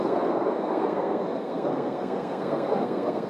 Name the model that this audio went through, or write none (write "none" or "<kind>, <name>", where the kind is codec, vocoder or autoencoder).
codec, SNAC